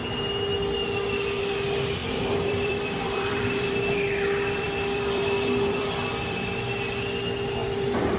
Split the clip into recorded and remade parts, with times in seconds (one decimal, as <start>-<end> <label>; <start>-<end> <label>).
0.0-2.0 recorded; 2.0-6.7 remade; 6.7-7.6 recorded; 7.6-8.2 remade